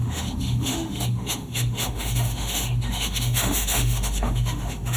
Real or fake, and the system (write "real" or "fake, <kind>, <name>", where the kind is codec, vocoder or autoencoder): fake, autoencoder, DAC-VAE